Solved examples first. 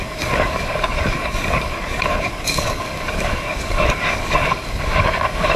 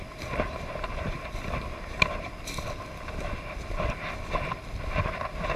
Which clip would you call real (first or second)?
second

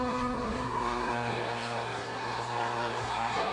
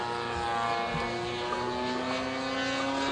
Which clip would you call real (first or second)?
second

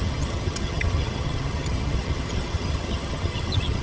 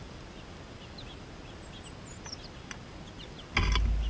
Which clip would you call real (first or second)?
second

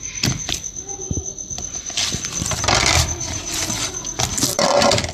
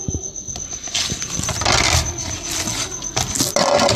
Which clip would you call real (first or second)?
second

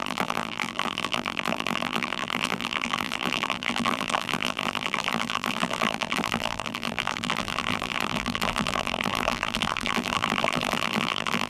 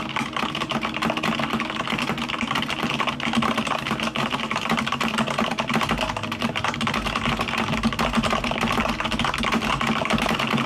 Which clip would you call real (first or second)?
second